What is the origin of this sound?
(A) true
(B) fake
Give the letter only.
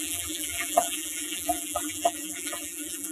B